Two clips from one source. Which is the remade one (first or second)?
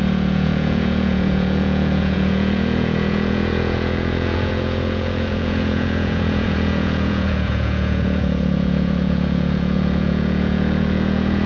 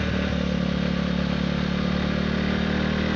first